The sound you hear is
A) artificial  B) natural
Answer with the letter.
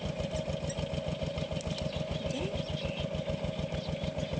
B